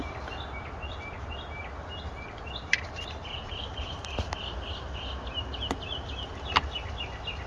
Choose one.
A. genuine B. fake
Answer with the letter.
A